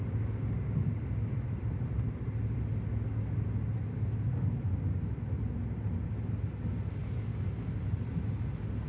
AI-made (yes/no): no